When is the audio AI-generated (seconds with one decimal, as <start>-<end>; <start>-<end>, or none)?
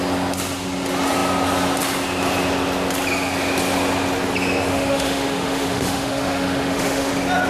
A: 4.7-7.1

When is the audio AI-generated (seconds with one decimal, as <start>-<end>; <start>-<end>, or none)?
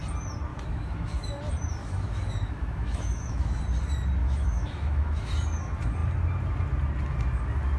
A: 0.5-1.4; 1.8-3.6; 4.2-5.3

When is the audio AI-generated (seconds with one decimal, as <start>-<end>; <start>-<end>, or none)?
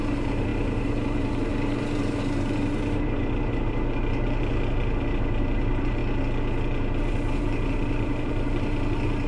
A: 0.0-6.0; 7.0-9.3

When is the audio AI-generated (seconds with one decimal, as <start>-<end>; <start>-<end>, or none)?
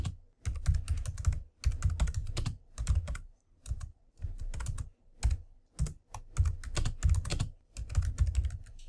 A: 2.2-4.5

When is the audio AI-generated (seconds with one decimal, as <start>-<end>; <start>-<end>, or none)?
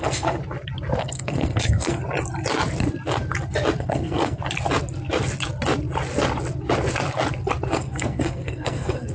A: 0.0-0.4; 1.0-2.0; 3.8-4.4; 7.7-9.1